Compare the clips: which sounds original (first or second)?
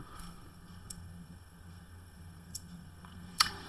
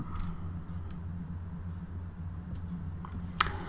second